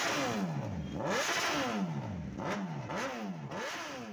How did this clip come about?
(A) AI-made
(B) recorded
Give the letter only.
B